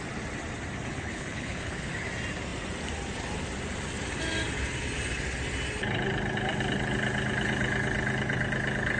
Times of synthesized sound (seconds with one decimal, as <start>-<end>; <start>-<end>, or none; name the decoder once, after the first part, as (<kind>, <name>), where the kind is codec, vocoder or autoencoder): 0.9-1.9 (codec, HILCodec)